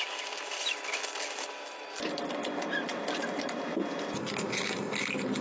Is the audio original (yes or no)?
yes